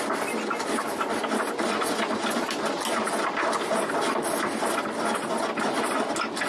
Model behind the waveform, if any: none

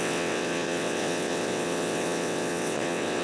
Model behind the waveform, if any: vocoder, WaveNeXt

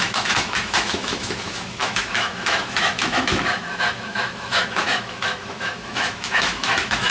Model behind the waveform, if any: autoencoder, DAC-VAE